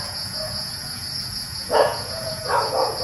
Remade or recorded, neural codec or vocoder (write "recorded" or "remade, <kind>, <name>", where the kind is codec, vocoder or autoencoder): remade, vocoder, Vocos